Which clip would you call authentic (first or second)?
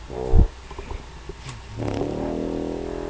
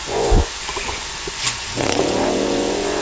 first